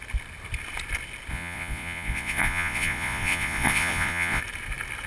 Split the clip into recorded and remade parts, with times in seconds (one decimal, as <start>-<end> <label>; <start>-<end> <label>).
0.0-1.3 recorded; 1.3-4.4 remade; 4.4-5.1 recorded

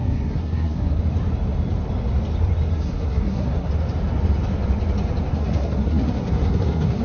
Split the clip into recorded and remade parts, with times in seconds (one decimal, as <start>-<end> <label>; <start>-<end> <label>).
0.0-1.0 remade; 1.0-2.7 recorded; 2.7-3.7 remade; 3.7-5.3 recorded; 5.3-7.0 remade

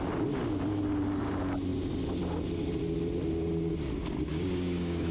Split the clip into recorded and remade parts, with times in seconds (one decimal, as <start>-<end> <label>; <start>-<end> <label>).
0.0-4.3 recorded; 4.3-5.1 remade